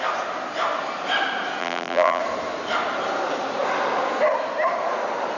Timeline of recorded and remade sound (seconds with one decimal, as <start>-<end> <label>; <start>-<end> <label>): 0.0-1.6 recorded; 1.6-2.2 remade; 2.2-5.4 recorded